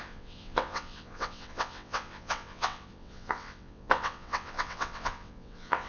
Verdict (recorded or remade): remade